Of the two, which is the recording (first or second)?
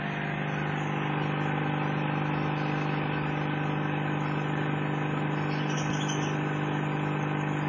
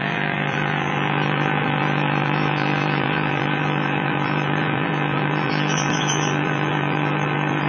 first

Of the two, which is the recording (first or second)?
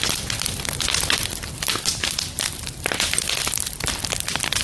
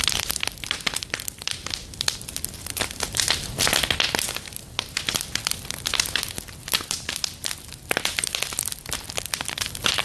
second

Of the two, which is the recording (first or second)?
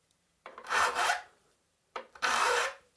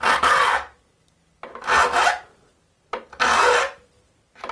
second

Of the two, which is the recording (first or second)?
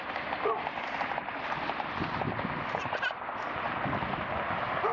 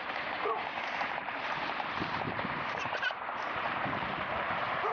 first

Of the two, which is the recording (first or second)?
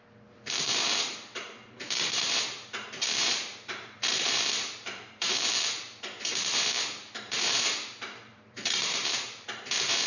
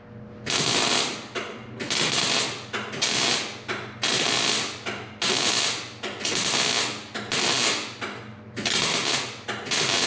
second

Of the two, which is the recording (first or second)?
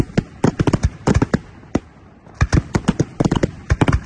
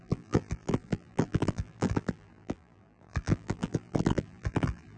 first